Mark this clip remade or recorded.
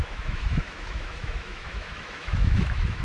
remade